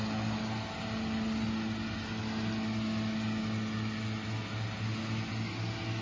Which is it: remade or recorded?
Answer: recorded